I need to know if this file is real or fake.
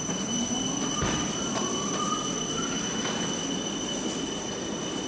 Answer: fake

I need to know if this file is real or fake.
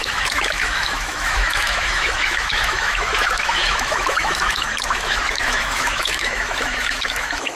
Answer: fake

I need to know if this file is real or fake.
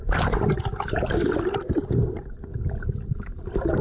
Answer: real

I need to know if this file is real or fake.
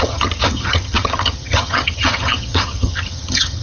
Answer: fake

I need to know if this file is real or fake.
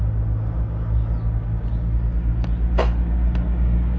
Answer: real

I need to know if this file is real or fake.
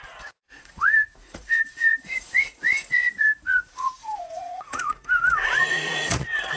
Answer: fake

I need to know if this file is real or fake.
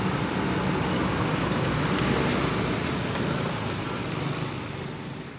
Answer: real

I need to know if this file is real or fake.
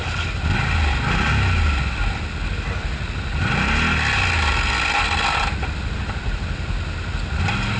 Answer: real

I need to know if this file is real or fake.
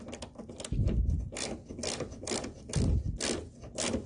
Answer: real